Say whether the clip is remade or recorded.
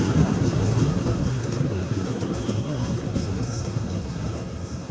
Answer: remade